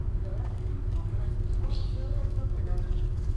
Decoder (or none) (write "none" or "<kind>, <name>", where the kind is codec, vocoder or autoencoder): codec, DAC